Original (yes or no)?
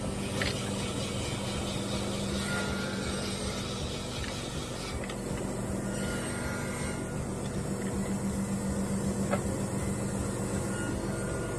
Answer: yes